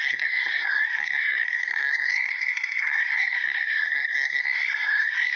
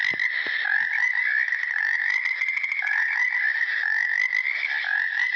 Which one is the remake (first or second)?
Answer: first